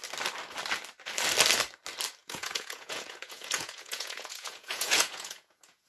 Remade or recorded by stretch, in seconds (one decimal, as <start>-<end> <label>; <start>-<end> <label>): 0.0-2.2 recorded; 2.2-5.9 remade

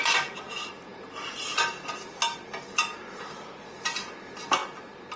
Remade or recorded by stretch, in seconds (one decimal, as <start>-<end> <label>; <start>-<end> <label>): 0.0-5.2 recorded

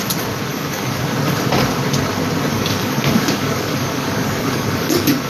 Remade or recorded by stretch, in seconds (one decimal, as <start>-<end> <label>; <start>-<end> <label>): 0.0-0.5 recorded; 0.5-1.0 remade; 1.0-2.5 recorded; 2.5-5.3 remade

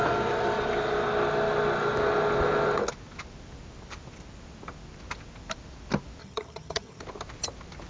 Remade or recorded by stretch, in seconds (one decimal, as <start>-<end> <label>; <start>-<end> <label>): 0.0-6.2 recorded; 6.2-7.0 remade; 7.0-7.9 recorded

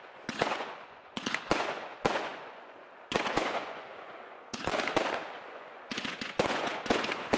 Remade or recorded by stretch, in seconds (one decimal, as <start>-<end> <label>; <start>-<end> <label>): 0.0-4.7 remade; 4.7-5.5 recorded; 5.5-7.4 remade